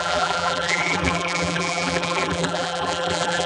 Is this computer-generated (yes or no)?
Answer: yes